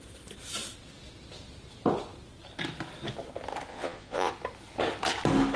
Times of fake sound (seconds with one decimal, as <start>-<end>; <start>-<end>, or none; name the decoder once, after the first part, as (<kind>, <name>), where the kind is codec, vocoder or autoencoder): 3.7-4.3 (vocoder, Vocos)